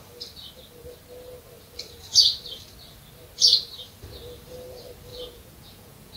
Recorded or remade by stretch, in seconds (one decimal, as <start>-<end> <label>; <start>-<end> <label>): 0.0-5.1 recorded; 5.1-6.2 remade